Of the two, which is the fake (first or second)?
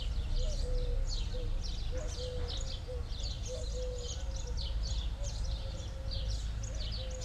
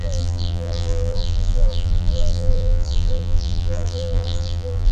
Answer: second